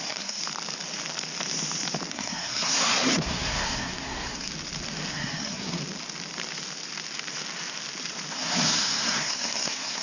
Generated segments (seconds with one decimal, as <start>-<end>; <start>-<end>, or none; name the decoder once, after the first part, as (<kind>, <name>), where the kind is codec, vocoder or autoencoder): 0.0-0.4 (codec, SNAC); 2.1-4.5; 5.1-5.8; 8.3-10.0